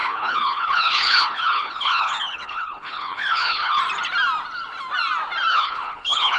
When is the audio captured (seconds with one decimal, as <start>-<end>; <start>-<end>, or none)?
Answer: 3.8-5.5